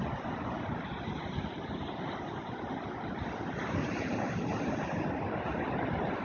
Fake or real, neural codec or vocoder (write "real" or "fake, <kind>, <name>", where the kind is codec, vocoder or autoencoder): real